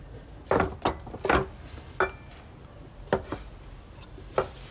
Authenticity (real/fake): real